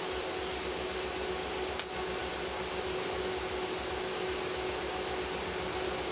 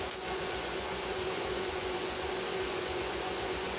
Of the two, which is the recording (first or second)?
first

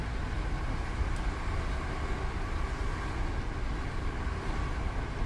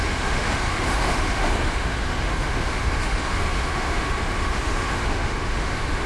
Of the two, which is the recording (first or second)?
first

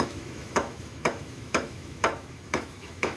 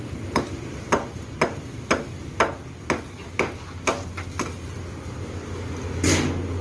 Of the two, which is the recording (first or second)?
second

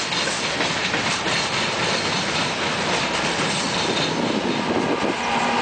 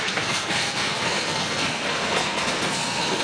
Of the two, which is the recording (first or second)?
first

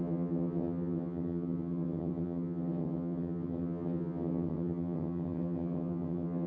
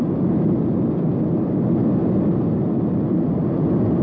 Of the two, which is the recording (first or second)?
second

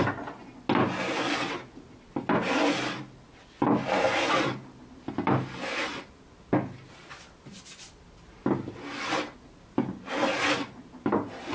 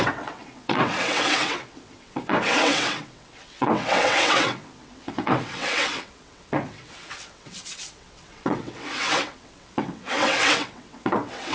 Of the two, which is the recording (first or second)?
first